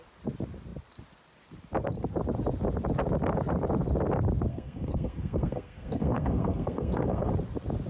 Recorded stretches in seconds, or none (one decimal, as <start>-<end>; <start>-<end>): 0.0-4.5; 7.3-7.9